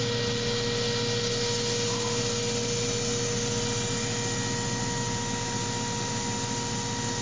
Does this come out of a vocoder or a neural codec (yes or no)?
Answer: no